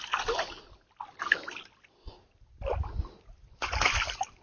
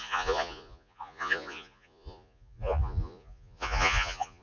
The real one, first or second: first